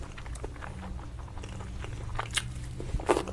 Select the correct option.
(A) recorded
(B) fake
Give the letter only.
A